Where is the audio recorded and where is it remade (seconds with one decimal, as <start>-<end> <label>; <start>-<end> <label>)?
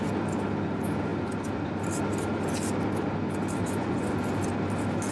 0.0-3.6 recorded; 3.6-4.1 remade; 4.1-5.1 recorded